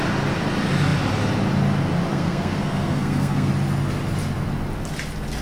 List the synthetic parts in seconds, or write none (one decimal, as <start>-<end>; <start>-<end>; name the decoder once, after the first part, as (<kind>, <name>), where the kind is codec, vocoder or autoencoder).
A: 2.1-3.5 (codec, SNAC)